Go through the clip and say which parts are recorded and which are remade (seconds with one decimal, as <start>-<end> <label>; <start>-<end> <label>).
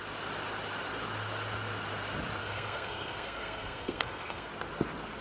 0.0-2.4 recorded; 2.4-4.5 remade; 4.5-5.2 recorded